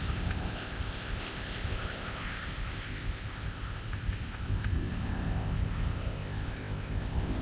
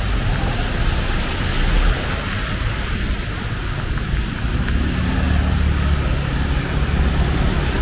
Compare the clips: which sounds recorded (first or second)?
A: second